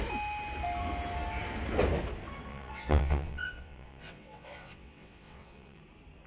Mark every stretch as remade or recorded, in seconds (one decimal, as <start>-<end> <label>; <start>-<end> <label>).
0.0-2.5 recorded; 2.5-5.8 remade; 5.8-6.3 recorded